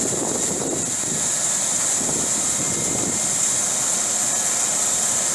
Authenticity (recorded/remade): recorded